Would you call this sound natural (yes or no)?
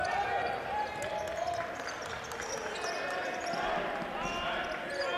yes